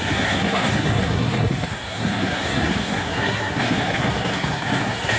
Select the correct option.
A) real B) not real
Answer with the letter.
B